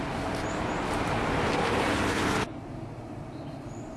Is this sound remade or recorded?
remade